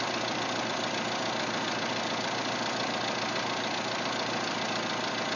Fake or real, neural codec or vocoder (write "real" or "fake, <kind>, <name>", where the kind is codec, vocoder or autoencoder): real